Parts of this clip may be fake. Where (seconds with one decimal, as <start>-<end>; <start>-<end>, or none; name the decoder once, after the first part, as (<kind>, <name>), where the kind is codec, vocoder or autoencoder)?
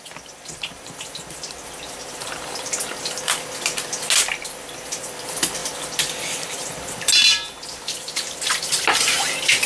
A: none